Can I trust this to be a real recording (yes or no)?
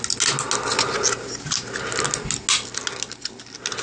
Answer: yes